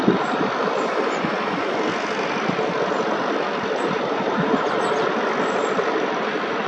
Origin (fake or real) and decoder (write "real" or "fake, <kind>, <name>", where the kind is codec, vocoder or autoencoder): real